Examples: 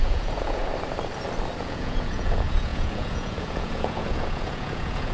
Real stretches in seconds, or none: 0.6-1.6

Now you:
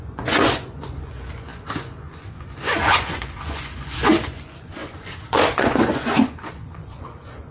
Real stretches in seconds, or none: none

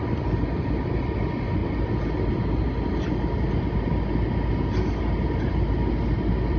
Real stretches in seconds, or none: 0.0-6.6